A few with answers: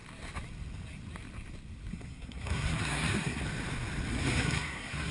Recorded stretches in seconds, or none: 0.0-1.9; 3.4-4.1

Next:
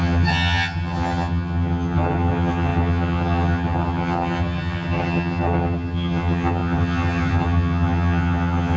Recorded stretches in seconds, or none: none

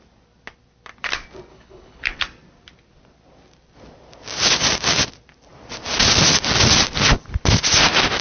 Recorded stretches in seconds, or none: 0.0-1.5; 2.2-8.2

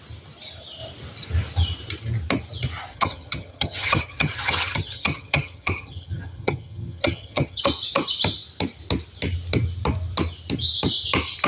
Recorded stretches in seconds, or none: 0.0-2.9; 7.6-11.5

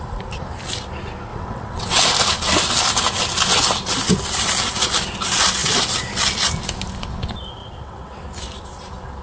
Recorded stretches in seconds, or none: 0.0-1.3; 2.0-7.6; 8.2-9.2

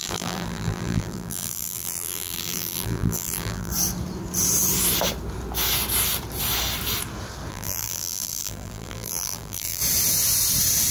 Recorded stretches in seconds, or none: 3.7-7.5; 9.8-10.9